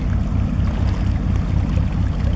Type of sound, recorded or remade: recorded